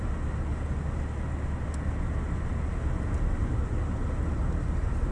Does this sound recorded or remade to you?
recorded